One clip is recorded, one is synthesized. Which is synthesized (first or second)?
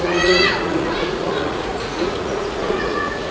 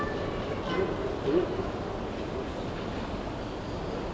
first